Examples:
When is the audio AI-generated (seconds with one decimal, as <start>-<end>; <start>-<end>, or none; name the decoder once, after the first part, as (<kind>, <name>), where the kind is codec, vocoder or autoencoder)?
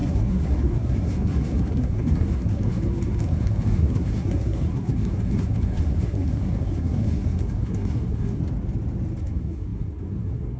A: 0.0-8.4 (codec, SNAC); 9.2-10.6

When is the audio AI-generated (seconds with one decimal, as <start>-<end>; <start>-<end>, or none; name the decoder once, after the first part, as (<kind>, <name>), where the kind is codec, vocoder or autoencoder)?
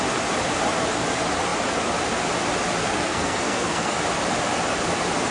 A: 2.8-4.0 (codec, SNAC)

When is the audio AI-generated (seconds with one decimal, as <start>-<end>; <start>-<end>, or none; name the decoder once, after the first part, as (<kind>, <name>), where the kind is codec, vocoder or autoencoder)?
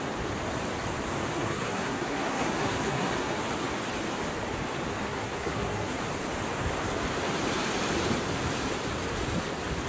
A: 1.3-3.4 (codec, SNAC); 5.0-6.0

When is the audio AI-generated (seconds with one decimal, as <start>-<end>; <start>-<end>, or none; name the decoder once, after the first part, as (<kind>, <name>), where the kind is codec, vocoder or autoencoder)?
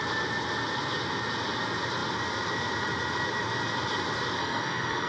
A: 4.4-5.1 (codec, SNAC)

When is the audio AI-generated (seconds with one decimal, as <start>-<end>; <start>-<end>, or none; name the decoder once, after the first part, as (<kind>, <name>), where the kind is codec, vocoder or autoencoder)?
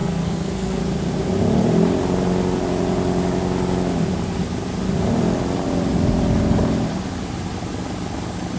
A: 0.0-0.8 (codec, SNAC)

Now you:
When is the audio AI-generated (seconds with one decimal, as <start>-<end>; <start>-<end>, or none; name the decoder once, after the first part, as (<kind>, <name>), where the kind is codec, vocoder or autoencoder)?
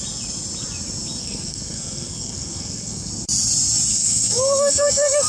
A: 1.2-3.1 (codec, SNAC); 3.9-5.3